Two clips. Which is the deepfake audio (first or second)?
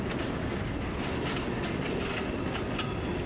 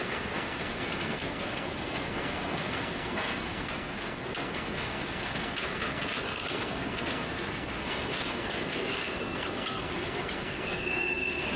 second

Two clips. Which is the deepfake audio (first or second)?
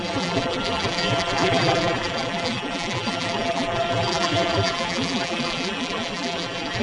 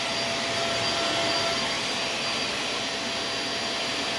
first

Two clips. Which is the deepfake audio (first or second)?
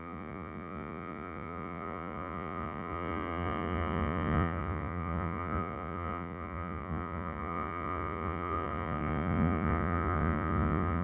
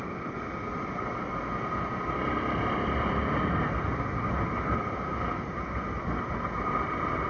first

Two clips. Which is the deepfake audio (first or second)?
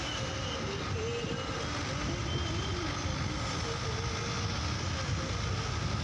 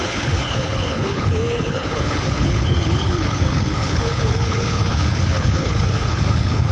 second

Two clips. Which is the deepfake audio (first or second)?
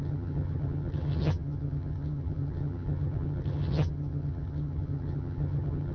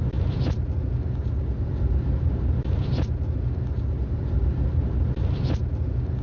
first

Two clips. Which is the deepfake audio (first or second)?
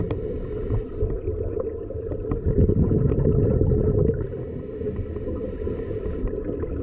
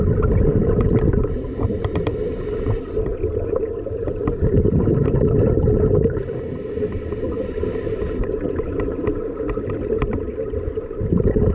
second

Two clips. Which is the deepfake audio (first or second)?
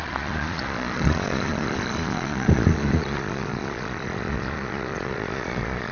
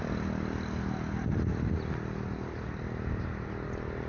first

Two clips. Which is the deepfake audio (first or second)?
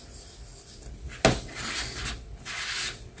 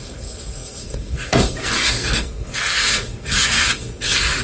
second